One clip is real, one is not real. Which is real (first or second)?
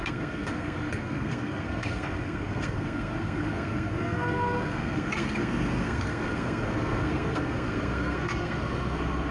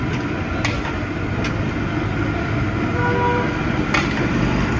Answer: second